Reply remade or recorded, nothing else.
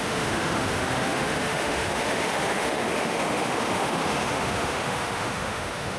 remade